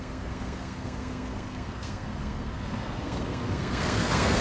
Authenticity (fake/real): fake